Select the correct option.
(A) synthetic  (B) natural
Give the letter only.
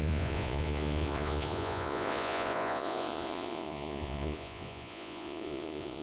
A